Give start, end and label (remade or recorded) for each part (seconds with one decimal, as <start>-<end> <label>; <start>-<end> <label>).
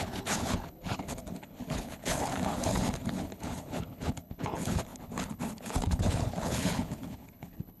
0.0-7.8 remade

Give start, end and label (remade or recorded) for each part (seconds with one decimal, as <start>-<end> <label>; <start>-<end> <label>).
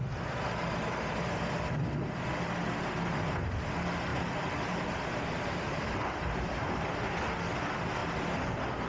0.0-4.1 recorded; 4.1-7.1 remade; 7.1-8.9 recorded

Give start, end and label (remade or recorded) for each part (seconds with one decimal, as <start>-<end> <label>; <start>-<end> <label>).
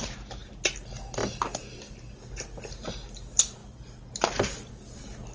0.0-5.3 recorded